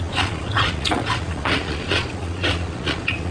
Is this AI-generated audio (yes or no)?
yes